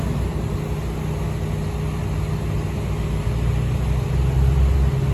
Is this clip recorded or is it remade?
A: recorded